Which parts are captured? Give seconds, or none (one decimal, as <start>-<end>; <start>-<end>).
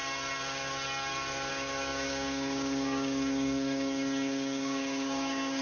0.0-1.5